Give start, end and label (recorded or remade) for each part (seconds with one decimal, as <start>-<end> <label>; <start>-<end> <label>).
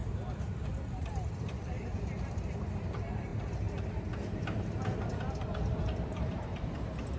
0.0-7.2 remade